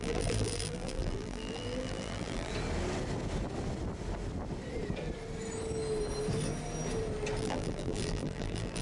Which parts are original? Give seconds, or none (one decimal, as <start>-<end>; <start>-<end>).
2.5-7.4